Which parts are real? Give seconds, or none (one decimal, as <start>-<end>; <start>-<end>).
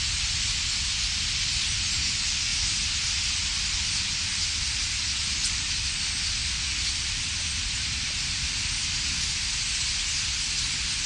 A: 0.0-11.1